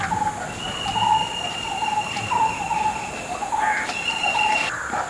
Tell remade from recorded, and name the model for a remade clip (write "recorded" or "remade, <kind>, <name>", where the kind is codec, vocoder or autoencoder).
remade, vocoder, BigVGAN v2